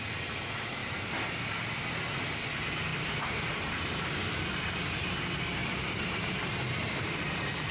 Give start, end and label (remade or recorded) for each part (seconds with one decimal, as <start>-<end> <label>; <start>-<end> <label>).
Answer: 0.0-0.8 recorded; 0.8-1.7 remade; 1.7-2.9 recorded; 2.9-5.1 remade; 5.1-5.6 recorded; 5.6-7.7 remade